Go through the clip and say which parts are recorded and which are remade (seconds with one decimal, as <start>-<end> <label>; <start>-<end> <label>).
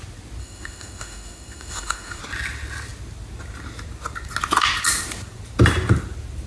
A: 0.0-0.4 recorded; 0.4-2.2 remade; 2.2-6.5 recorded